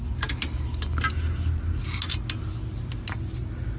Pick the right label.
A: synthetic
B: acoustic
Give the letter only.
B